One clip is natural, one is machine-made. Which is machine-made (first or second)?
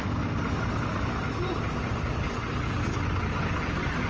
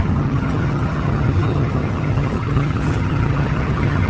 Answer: second